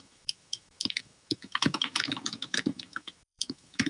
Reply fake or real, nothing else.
fake